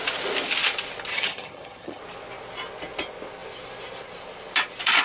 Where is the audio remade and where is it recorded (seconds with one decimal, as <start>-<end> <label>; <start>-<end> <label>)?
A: 0.0-1.1 recorded; 1.1-2.0 remade; 2.0-5.0 recorded